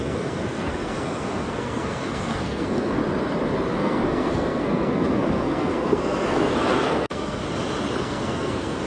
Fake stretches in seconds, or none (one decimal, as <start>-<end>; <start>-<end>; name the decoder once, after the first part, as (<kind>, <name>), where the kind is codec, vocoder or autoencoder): 0.0-3.0 (codec, SNAC); 3.7-7.4; 8.0-8.9